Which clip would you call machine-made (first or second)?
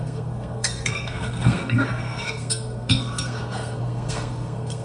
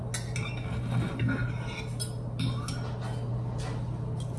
first